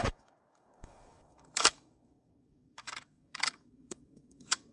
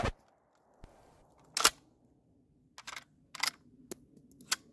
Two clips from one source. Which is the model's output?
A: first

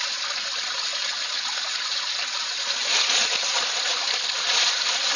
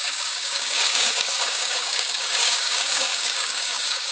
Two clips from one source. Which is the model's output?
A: second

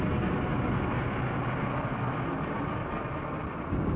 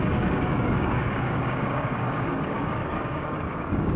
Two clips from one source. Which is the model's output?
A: second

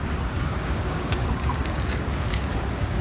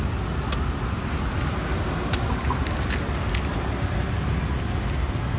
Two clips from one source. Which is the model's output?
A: first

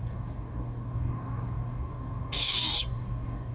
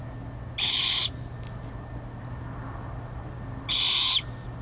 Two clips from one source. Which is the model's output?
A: first